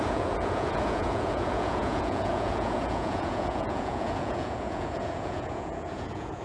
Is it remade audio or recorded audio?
remade